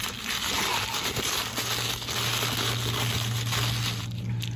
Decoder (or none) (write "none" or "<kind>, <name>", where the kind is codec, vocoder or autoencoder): none